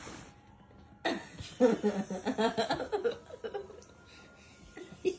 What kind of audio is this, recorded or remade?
recorded